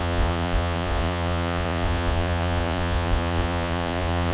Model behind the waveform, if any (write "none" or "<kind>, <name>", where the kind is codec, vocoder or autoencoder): vocoder, Vocos